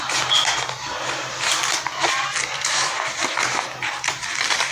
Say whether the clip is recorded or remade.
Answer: recorded